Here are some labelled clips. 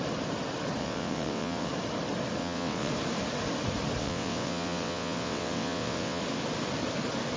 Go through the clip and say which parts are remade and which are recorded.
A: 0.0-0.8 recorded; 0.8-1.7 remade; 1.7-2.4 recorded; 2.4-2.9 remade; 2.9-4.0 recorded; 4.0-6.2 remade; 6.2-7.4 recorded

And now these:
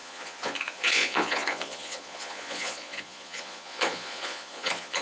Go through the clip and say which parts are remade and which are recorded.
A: 0.0-5.0 remade